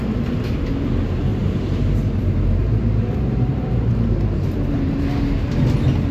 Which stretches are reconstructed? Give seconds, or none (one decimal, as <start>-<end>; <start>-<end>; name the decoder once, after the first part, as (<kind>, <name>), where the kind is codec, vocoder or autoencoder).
1.3-5.0 (vocoder, BigVGAN v2)